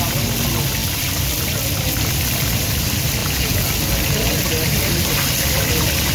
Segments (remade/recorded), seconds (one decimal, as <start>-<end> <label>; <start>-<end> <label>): 0.0-3.2 recorded; 3.2-3.7 remade; 3.7-6.1 recorded